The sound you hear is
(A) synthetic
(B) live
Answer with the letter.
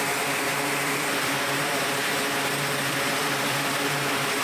A